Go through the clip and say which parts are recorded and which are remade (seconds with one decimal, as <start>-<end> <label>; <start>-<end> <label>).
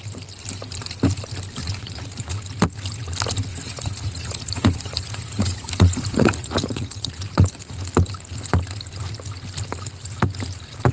0.0-1.6 recorded; 1.6-2.4 remade; 2.4-3.5 recorded; 3.5-7.8 remade; 7.8-10.9 recorded